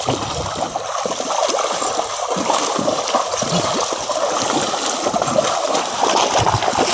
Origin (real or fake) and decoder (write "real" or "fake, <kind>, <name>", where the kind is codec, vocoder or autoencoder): real